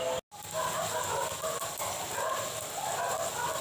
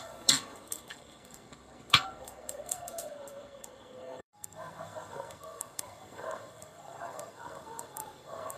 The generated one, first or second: second